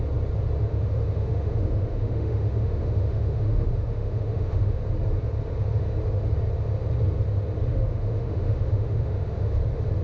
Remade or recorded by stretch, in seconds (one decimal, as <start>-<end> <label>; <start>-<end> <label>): 0.0-0.7 recorded; 0.7-4.8 remade; 4.8-7.7 recorded; 7.7-9.6 remade; 9.6-10.0 recorded